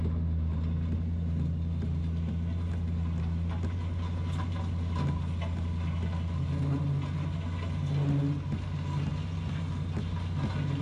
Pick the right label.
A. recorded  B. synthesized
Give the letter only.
A